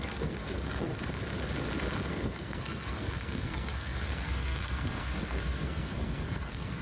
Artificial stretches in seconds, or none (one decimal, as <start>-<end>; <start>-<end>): 0.0-0.9; 2.1-6.8